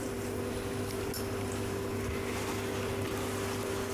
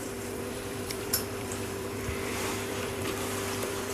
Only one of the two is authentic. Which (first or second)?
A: first